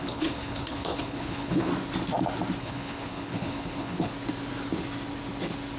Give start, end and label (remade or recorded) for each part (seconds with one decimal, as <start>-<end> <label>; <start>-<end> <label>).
0.0-1.7 remade; 1.7-2.6 recorded; 2.6-4.1 remade; 4.1-5.8 recorded